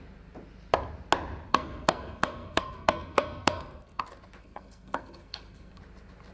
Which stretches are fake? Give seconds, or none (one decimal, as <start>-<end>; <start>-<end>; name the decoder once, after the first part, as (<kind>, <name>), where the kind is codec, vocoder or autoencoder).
1.5-4.0 (codec, SNAC); 4.4-5.8